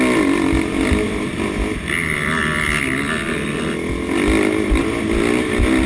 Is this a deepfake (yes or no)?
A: no